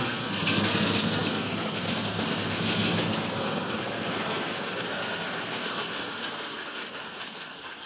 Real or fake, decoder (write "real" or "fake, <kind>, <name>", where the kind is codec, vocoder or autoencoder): fake, codec, SNAC